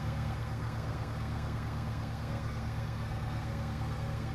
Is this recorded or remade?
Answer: remade